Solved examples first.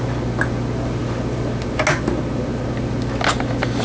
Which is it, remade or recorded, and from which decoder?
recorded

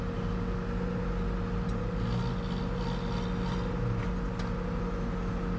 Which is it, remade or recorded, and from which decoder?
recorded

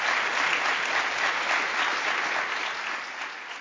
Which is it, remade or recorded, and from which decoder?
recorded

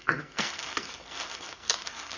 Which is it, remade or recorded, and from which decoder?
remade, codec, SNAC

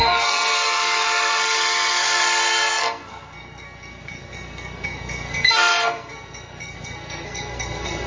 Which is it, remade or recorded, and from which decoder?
remade, codec, SNAC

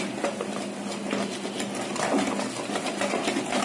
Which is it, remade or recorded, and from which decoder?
recorded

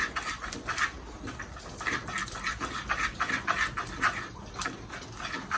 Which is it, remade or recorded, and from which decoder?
recorded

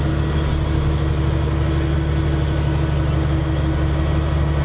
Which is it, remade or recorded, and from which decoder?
recorded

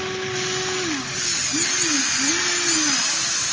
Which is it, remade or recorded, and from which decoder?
recorded